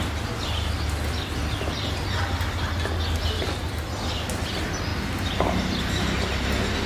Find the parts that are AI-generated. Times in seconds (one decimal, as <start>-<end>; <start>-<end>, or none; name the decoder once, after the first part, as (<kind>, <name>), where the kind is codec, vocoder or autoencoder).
none